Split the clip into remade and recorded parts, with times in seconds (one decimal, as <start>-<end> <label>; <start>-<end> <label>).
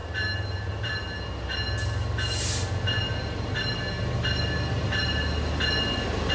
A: 0.0-0.9 remade; 0.9-6.3 recorded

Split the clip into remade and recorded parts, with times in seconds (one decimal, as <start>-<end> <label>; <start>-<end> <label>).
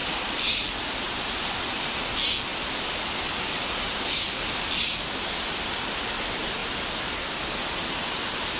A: 0.0-8.6 recorded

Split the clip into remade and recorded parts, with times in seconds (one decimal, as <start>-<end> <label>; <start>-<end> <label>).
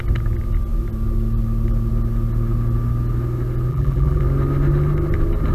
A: 0.0-3.7 recorded; 3.7-4.2 remade; 4.2-5.5 recorded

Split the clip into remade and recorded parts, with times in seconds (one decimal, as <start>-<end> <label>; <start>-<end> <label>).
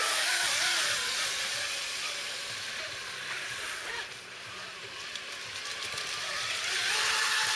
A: 0.0-1.5 recorded; 1.5-3.9 remade; 3.9-4.7 recorded; 4.7-6.9 remade; 6.9-7.6 recorded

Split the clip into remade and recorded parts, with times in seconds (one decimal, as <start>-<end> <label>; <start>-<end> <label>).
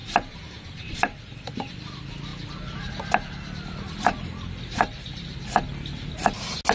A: 0.0-1.2 remade; 1.2-6.7 recorded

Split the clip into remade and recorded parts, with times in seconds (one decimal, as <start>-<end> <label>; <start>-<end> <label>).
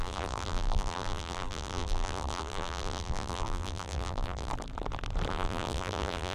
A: 0.0-4.5 remade; 4.5-5.3 recorded; 5.3-6.3 remade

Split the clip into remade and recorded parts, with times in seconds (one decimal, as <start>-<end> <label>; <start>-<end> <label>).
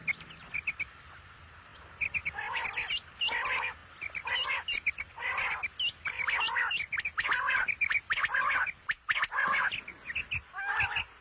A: 0.0-11.2 recorded